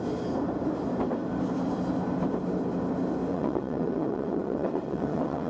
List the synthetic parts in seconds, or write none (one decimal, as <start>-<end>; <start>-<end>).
3.3-5.5